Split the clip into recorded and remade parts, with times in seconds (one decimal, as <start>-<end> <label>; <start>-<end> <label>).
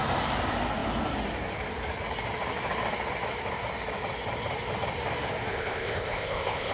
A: 0.0-5.5 recorded; 5.5-6.7 remade